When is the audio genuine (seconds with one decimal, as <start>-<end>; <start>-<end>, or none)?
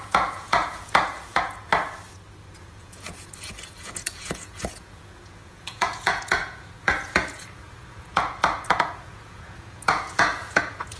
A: 1.7-2.6